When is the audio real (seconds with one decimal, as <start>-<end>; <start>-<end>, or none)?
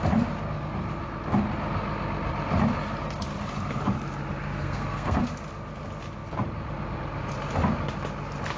0.0-4.4; 5.2-8.6